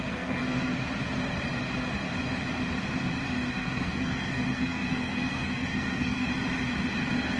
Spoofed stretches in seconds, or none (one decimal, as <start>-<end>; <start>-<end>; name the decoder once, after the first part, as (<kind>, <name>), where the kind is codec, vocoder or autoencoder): 0.0-0.7 (codec, SNAC); 3.5-6.3; 7.0-7.4